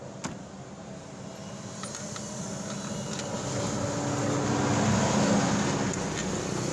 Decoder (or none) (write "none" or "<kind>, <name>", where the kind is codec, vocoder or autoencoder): none